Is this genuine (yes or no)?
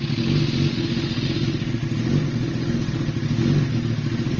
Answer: yes